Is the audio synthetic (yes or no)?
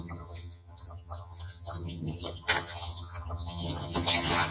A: yes